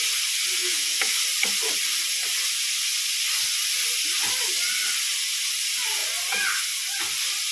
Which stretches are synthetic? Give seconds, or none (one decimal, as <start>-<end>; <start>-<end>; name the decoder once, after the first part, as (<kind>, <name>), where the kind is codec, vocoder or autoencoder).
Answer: 0.6-1.1 (autoencoder, DAC-VAE)

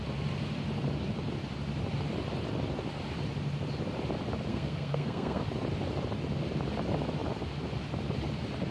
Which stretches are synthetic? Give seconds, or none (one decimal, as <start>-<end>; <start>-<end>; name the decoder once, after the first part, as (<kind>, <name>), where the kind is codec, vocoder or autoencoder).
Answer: 4.5-5.4 (codec, SNAC)

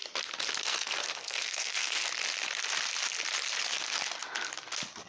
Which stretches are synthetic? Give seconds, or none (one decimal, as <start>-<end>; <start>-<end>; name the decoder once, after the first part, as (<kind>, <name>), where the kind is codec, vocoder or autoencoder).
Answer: 0.6-2.0 (codec, SNAC)

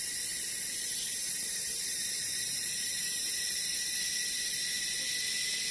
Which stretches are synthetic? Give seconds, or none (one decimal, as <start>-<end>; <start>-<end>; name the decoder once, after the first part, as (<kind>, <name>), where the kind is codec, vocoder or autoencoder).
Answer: 1.1-4.5 (vocoder, BigVGAN v2)

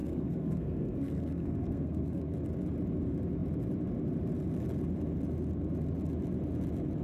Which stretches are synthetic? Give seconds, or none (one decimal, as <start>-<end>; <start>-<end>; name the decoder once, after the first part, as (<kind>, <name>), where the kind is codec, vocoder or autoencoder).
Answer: 0.0-2.2 (codec, SNAC)

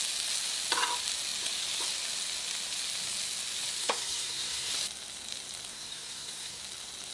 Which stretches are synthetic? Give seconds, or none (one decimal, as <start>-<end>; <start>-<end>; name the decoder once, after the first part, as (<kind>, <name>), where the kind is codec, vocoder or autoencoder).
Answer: 3.8-4.7 (codec, SNAC); 5.7-6.6

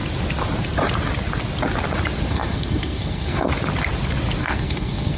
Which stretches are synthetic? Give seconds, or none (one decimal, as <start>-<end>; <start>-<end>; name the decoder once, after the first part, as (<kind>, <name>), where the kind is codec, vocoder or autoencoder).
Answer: 2.3-3.5 (codec, SNAC); 4.4-5.2

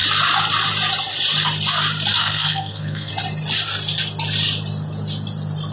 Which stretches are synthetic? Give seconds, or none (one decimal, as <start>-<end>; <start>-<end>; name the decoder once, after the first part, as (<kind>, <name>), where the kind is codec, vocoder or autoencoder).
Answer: 2.2-3.1 (codec, SNAC)